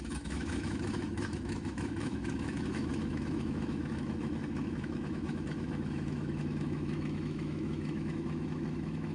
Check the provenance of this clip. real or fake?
fake